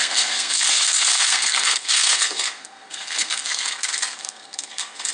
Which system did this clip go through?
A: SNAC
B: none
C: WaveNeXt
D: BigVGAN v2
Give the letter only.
A